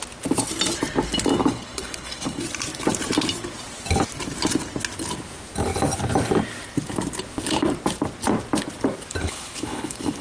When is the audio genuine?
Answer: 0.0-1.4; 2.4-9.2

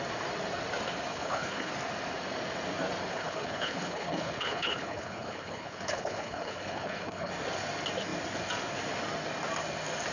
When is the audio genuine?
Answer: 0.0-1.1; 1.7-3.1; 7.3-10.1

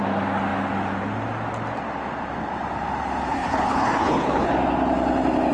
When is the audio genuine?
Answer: 0.0-3.3; 4.5-5.5